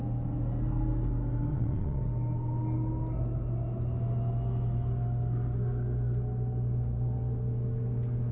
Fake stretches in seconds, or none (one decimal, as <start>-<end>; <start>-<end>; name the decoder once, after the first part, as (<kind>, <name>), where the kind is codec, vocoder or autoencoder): 1.5-2.0 (vocoder, Vocos)